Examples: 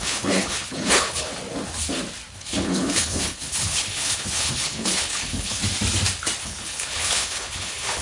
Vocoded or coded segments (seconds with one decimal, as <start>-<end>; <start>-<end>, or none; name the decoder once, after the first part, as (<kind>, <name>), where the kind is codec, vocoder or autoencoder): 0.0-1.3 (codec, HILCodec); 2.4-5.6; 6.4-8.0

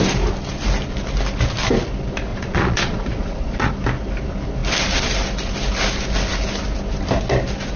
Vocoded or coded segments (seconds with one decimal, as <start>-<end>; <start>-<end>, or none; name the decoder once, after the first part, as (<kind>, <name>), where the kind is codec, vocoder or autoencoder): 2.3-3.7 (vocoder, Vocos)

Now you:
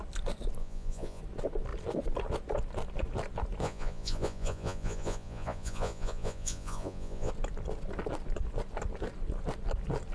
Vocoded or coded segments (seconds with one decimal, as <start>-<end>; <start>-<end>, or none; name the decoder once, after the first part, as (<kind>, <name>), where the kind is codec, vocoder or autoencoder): 0.6-1.2 (vocoder, Vocos); 3.6-7.3